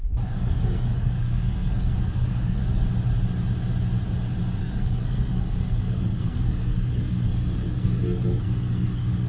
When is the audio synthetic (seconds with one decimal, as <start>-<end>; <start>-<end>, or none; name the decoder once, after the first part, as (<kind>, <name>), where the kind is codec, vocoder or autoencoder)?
0.0-2.6 (codec, SNAC); 4.6-9.3